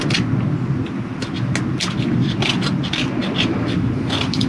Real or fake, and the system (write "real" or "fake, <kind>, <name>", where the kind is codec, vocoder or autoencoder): real